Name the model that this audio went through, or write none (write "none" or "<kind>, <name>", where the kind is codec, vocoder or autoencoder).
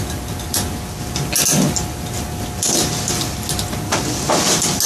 none